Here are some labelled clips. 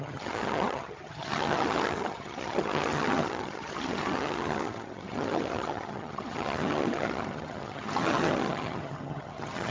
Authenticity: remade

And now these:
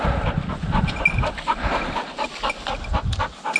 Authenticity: recorded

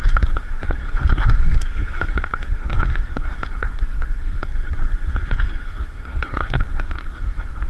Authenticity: remade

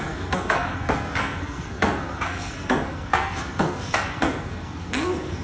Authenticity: remade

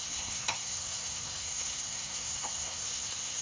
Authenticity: remade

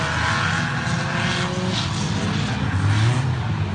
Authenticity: recorded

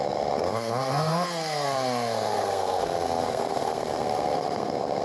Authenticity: remade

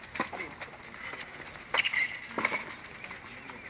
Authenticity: recorded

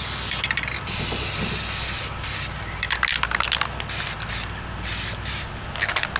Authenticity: recorded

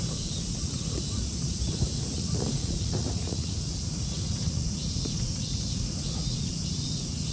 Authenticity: remade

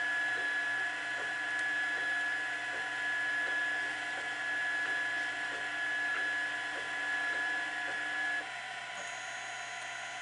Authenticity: recorded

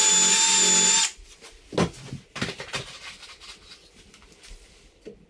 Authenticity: recorded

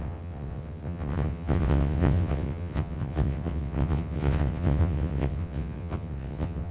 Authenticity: remade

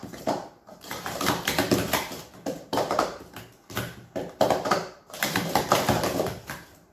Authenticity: remade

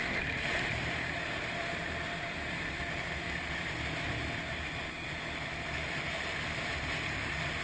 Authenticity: remade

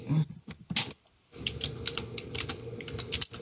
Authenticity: recorded